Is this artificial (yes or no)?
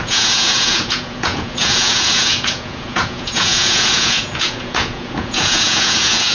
yes